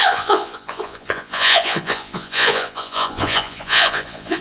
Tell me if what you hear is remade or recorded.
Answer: remade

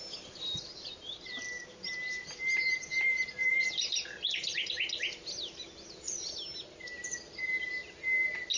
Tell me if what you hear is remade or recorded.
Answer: recorded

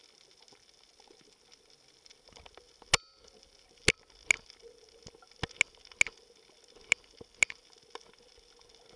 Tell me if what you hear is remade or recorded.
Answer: recorded